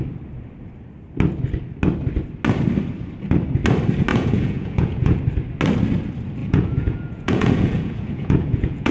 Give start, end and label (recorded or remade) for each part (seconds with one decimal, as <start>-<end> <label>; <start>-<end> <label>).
0.0-4.1 recorded; 4.1-5.2 remade; 5.2-6.4 recorded; 6.4-8.9 remade